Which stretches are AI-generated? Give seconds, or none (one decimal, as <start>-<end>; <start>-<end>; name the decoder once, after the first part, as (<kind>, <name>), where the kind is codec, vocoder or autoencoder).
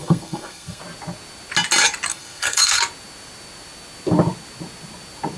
0.0-0.8 (codec, SNAC); 2.1-2.8